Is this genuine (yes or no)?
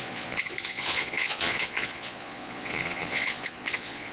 no